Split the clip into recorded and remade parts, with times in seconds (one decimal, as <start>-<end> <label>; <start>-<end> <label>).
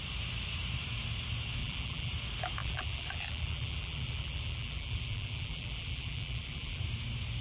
0.0-1.6 recorded; 1.6-2.1 remade; 2.1-2.6 recorded; 2.6-6.8 remade; 6.8-7.4 recorded